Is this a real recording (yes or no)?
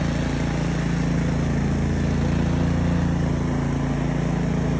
yes